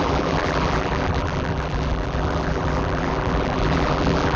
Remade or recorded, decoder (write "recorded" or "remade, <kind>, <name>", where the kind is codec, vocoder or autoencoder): remade, vocoder, BigVGAN v2